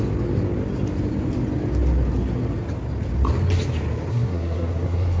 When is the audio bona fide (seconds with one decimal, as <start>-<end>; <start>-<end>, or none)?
0.0-4.1